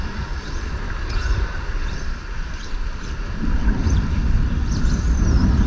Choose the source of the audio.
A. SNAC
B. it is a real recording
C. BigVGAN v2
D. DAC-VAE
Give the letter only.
B